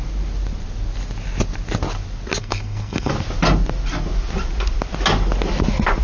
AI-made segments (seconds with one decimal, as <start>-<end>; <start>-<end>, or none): 2.4-3.1